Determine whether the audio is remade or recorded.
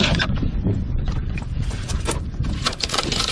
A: remade